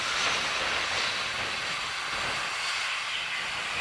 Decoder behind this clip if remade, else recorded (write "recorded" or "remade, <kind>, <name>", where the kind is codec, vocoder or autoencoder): recorded